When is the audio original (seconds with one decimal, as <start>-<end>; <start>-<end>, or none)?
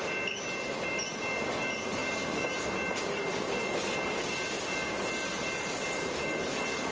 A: 0.0-6.9